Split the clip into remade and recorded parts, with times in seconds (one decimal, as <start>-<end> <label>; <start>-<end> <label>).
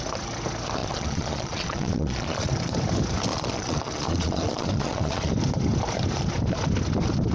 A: 0.0-0.8 recorded; 0.8-2.5 remade; 2.5-3.3 recorded; 3.3-5.3 remade; 5.3-7.3 recorded